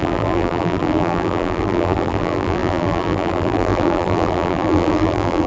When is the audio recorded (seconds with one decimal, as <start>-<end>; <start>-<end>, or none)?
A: none